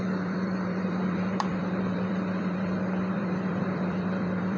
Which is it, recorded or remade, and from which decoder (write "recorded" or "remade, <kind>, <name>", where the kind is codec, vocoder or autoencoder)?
remade, vocoder, BigVGAN v2